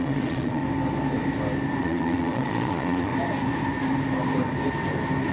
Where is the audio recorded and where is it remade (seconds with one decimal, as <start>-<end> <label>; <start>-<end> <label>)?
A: 0.0-0.6 remade; 0.6-1.8 recorded; 1.8-3.1 remade; 3.1-5.3 recorded